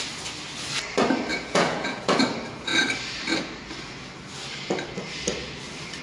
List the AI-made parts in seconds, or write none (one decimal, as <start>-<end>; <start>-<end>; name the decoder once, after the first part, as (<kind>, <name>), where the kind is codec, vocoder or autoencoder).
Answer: 1.3-2.2 (vocoder, Vocos)